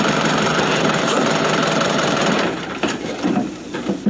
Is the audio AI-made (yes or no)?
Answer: yes